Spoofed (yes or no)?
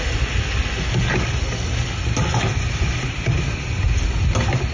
no